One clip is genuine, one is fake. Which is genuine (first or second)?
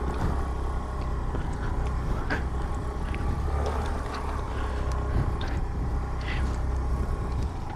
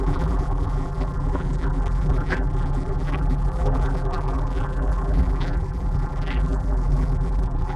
first